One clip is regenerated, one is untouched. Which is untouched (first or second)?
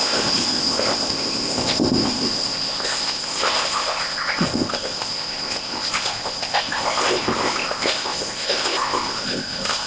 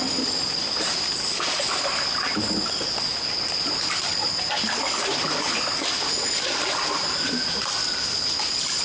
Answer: second